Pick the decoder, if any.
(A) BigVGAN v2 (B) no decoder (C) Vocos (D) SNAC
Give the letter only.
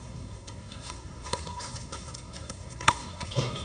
D